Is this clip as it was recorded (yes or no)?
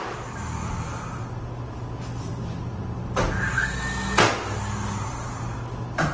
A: yes